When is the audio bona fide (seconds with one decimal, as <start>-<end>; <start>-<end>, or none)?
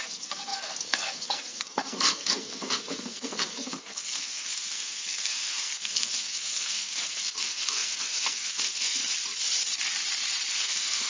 9.0-10.5